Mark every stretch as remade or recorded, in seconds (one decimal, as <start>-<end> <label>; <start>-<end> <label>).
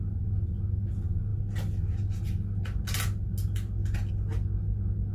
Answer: 0.0-5.1 recorded